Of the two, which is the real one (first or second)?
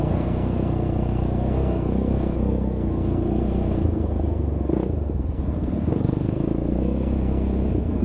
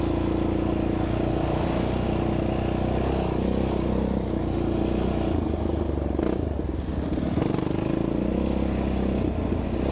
second